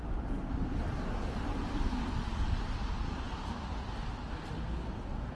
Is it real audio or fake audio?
real